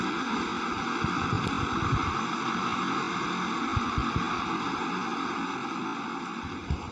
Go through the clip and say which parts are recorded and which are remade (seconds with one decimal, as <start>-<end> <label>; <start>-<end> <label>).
0.0-6.9 recorded